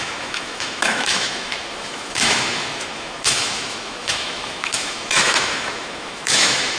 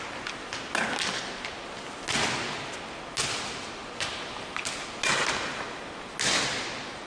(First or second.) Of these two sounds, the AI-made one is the first